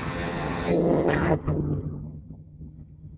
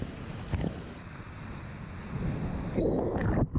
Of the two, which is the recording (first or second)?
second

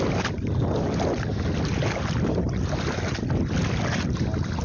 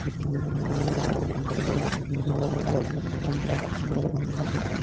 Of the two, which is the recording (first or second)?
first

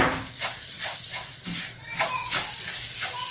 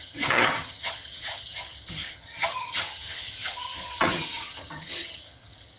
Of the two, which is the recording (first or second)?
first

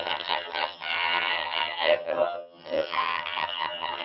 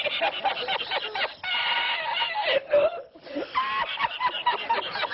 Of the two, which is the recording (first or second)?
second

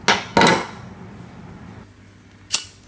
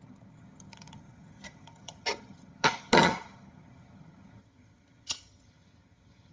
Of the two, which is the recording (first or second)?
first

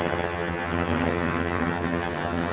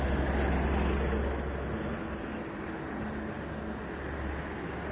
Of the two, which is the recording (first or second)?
second